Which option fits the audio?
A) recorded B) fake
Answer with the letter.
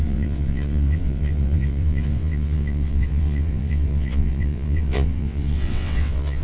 B